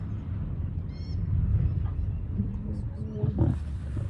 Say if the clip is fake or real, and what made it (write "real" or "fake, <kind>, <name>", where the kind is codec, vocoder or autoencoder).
real